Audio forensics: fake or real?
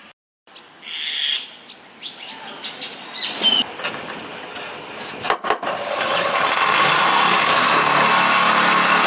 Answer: real